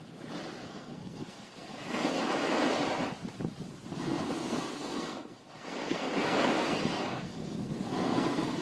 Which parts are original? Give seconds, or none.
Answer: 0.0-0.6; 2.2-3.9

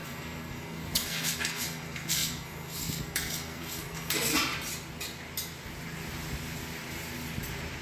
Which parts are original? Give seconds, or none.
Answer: 4.3-7.8